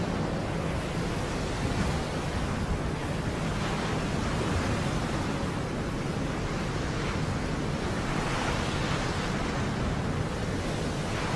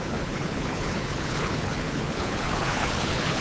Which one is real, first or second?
first